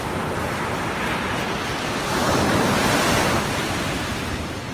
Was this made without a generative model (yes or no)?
yes